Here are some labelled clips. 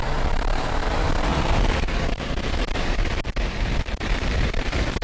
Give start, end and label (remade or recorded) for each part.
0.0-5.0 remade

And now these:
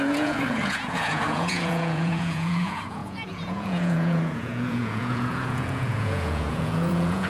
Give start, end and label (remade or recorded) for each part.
0.0-7.3 remade

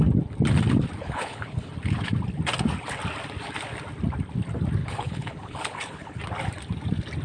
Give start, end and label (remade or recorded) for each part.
0.0-1.0 recorded; 1.0-1.7 remade; 1.7-4.8 recorded; 4.8-6.2 remade; 6.2-7.2 recorded

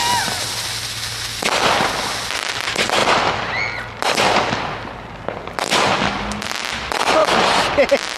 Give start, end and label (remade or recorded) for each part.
0.0-8.2 recorded

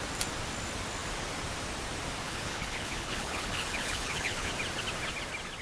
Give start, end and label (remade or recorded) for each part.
0.0-2.2 recorded; 2.2-4.5 remade; 4.5-5.6 recorded

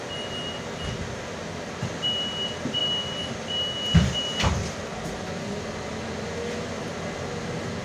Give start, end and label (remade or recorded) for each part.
0.0-7.8 recorded